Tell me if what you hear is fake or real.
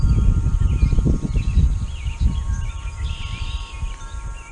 fake